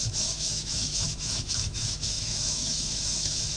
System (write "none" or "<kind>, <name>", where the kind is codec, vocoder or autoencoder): autoencoder, DAC-VAE